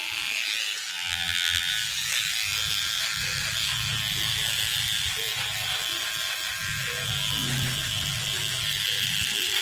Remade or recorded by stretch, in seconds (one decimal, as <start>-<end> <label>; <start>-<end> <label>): 0.0-0.9 recorded; 0.9-1.7 remade; 1.7-9.6 recorded

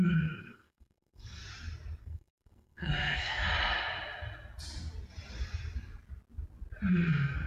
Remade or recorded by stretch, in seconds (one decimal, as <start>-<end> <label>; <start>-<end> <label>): 0.0-1.4 remade; 1.4-2.0 recorded; 2.0-3.4 remade; 3.4-6.9 recorded; 6.9-7.5 remade

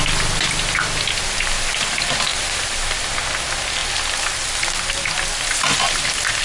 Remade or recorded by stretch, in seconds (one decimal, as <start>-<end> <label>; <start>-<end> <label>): 0.0-6.4 recorded

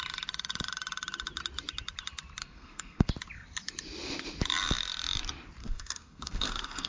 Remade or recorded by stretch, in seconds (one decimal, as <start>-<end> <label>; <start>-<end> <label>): 0.0-2.4 recorded; 2.4-3.1 remade; 3.1-5.6 recorded; 5.6-6.9 remade

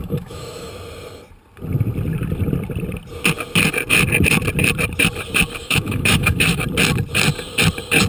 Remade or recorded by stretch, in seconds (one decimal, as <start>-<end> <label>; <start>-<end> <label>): 0.0-0.7 remade; 0.7-5.6 recorded; 5.6-6.6 remade; 6.6-8.1 recorded